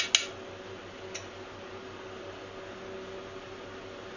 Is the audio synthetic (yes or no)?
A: no